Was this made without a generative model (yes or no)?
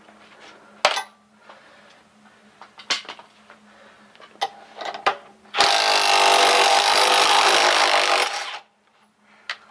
yes